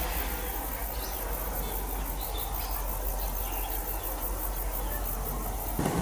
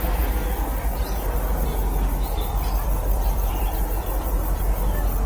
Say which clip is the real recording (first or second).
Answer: first